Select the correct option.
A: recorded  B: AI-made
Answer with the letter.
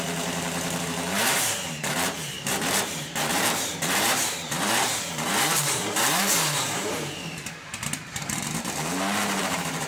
B